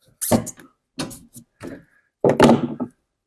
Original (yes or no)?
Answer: yes